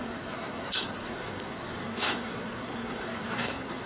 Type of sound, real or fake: fake